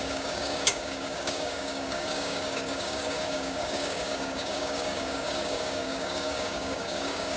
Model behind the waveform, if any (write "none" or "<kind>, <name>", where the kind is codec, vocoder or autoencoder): codec, DAC